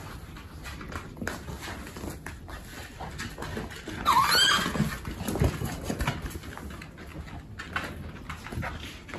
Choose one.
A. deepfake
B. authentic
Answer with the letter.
B